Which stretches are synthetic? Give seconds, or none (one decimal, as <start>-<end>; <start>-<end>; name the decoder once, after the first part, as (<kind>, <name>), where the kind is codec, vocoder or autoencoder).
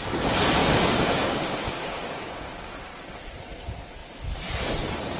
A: 0.6-2.7 (codec, DAC)